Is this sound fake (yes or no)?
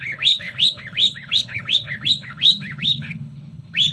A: yes